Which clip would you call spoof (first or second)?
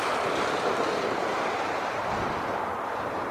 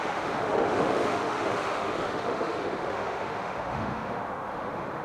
second